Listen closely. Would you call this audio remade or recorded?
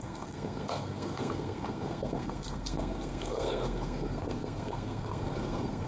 remade